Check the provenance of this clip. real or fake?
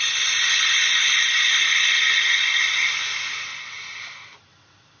real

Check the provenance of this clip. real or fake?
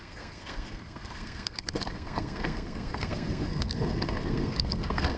fake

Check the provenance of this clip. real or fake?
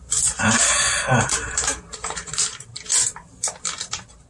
fake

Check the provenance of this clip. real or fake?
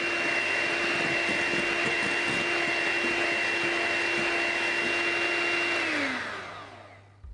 real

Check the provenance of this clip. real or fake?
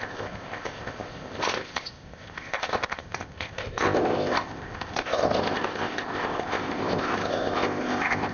fake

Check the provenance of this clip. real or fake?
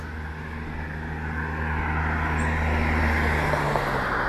real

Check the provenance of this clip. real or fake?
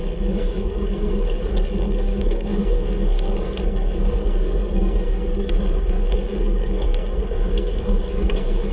fake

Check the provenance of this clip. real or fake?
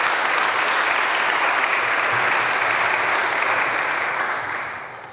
real